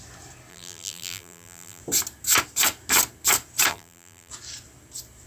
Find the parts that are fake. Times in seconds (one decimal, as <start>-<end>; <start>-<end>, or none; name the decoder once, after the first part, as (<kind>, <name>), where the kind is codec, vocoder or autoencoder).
0.5-1.8 (vocoder, BigVGAN v2); 3.7-4.3